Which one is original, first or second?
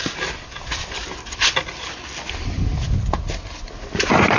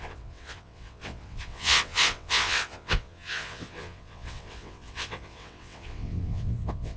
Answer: first